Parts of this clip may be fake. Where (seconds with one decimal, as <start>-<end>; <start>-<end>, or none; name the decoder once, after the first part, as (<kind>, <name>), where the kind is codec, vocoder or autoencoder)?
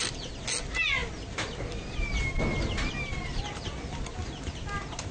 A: none